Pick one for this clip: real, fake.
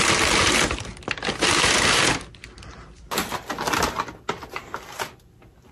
real